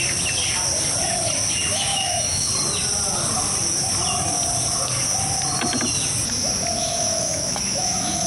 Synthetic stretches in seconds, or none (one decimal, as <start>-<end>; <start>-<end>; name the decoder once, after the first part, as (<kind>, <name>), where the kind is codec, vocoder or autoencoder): 1.7-2.5 (autoencoder, DAC-VAE); 6.8-8.3

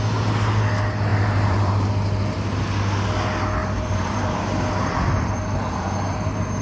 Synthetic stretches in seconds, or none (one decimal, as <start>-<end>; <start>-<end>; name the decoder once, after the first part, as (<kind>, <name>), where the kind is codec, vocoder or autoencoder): 1.1-1.9 (vocoder, BigVGAN v2); 3.6-6.6

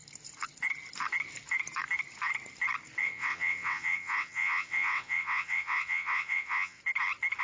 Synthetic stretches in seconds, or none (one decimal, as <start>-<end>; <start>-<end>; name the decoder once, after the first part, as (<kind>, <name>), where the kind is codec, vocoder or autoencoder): 3.0-6.8 (vocoder, WaveNeXt)